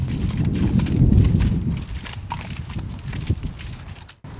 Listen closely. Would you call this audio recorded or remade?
recorded